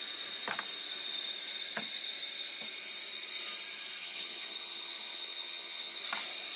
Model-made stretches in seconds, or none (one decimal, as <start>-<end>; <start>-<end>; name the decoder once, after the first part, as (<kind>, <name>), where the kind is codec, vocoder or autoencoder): 4.0-6.0 (vocoder, HiFi-GAN)